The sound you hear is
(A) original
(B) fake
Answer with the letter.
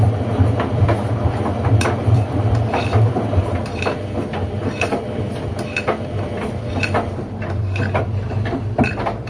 B